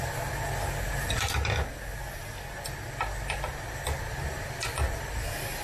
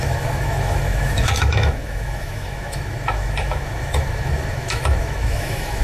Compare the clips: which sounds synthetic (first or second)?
second